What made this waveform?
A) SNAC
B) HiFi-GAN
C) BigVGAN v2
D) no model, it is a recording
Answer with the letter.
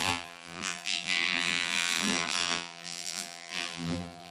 C